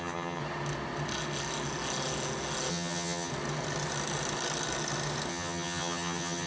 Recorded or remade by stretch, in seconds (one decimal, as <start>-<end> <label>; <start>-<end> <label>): 0.0-0.4 remade; 0.4-2.7 recorded; 2.7-3.3 remade; 3.3-5.3 recorded; 5.3-6.5 remade